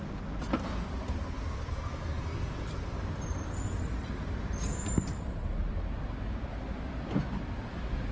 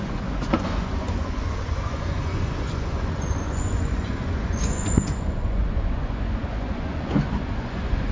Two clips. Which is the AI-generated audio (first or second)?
second